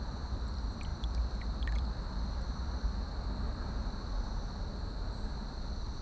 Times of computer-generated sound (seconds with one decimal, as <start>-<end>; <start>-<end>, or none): 0.0-6.0

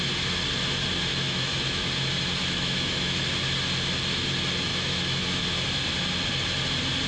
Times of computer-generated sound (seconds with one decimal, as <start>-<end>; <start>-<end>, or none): 1.1-1.9; 2.4-3.2; 4.7-5.4

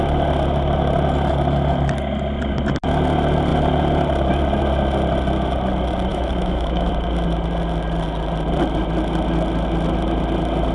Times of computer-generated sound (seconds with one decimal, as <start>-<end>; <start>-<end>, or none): 6.1-6.9

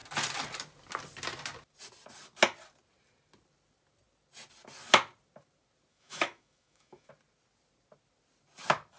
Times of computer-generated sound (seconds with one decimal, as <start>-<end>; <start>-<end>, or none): 5.9-7.1

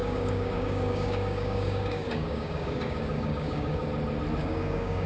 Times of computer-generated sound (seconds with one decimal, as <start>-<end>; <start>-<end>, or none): 0.0-3.8; 4.4-5.1

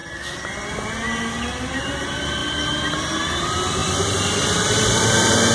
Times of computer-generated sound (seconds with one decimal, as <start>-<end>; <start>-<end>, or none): 2.4-2.9; 3.8-5.1

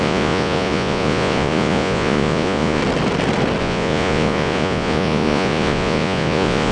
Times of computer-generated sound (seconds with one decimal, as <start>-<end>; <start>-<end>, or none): 0.0-2.8; 3.6-6.7